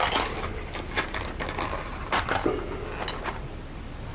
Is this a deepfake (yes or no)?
no